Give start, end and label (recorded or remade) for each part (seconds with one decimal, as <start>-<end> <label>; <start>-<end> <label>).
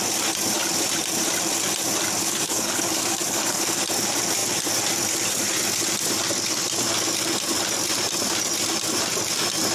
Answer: 0.0-2.2 recorded; 2.2-3.8 remade; 3.8-9.7 recorded